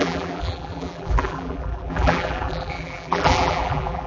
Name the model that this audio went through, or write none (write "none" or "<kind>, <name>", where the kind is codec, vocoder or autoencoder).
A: vocoder, BigVGAN v2